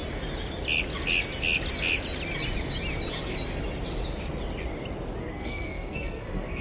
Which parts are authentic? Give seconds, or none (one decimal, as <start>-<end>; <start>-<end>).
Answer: 0.0-5.2